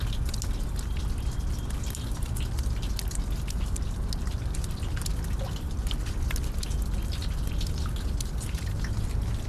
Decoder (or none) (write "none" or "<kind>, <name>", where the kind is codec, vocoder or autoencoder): none